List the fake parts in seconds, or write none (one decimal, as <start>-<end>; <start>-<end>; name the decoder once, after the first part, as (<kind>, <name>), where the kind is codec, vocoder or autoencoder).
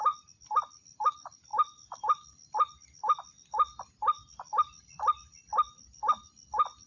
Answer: none